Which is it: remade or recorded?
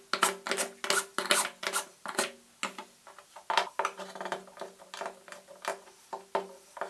recorded